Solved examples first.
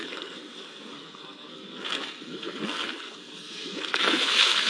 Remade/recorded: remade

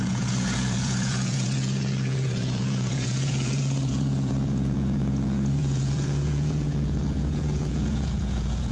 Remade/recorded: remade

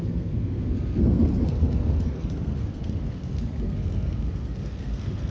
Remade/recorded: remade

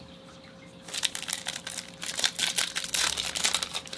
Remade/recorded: recorded